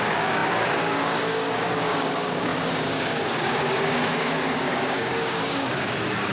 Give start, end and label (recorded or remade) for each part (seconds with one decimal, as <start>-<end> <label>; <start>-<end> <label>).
0.0-6.3 remade

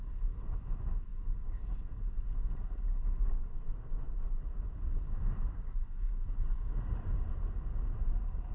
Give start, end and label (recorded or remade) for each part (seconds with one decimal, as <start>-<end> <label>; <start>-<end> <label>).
0.0-8.5 recorded

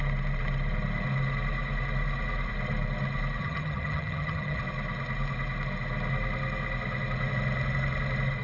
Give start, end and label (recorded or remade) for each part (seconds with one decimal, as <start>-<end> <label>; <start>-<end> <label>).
0.0-3.4 recorded; 3.4-4.6 remade; 4.6-8.4 recorded

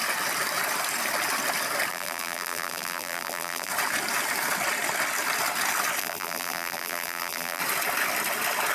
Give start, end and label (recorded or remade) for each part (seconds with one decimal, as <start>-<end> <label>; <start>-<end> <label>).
0.0-1.9 recorded; 1.9-3.7 remade; 3.7-6.0 recorded; 6.0-7.6 remade; 7.6-8.7 recorded

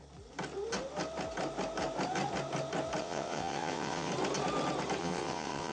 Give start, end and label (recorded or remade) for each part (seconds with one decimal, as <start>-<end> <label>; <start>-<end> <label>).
0.0-3.0 recorded; 3.0-4.1 remade; 4.1-5.0 recorded; 5.0-5.7 remade

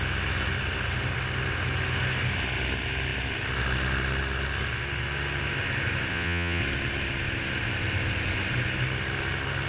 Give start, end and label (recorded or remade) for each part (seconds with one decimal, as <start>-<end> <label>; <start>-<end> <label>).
0.0-6.1 recorded; 6.1-6.6 remade; 6.6-9.7 recorded